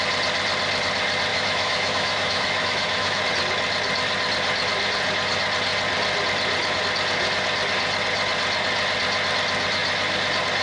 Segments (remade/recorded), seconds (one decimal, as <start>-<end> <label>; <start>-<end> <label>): 0.0-1.3 recorded; 1.3-3.2 remade; 3.2-10.6 recorded